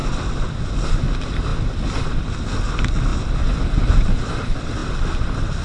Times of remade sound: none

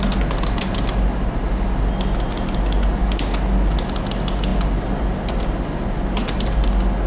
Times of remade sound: none

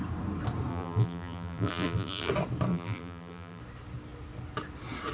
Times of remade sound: 0.7-2.3 (vocoder, BigVGAN v2); 2.7-3.6

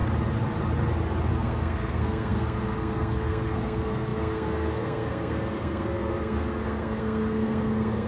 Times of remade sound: 1.3-8.1 (codec, SNAC)